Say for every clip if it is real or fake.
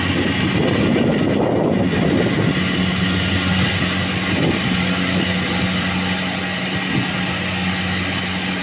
real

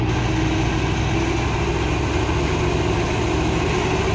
real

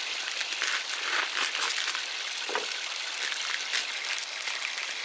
real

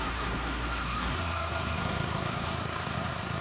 fake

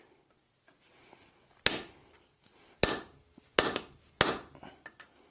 real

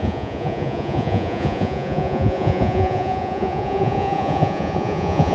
fake